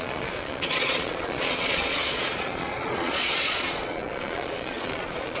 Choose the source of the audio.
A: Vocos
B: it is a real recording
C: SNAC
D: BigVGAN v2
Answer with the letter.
A